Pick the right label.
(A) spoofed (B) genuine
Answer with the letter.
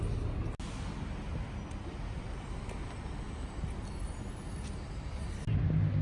B